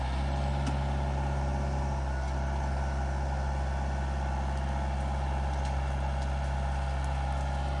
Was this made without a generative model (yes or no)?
yes